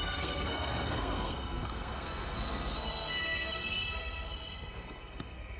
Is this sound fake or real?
fake